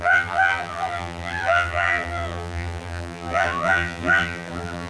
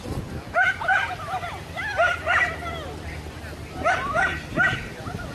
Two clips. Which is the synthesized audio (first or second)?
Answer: first